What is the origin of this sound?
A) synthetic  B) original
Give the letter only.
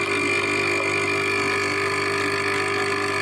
B